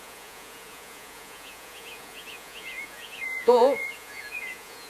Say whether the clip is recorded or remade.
remade